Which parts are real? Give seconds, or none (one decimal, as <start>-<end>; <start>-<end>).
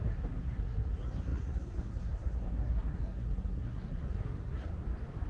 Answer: 4.7-5.3